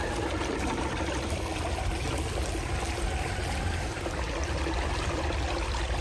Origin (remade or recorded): recorded